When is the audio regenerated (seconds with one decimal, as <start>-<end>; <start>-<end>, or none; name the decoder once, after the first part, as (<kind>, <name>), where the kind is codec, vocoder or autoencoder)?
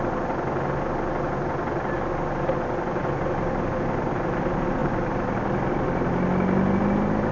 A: none